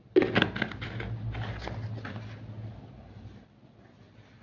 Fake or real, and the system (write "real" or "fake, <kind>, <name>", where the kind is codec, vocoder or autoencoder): real